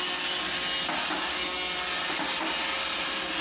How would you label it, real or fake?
real